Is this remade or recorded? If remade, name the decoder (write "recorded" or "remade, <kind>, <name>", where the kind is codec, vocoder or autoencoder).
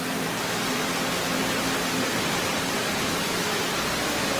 remade, vocoder, BigVGAN v2